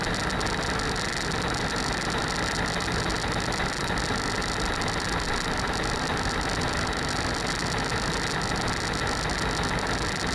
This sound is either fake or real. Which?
real